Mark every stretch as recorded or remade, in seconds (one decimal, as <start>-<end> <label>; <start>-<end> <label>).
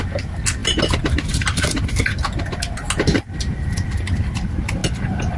0.0-5.4 recorded